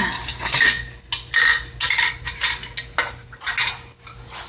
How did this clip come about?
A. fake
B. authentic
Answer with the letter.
B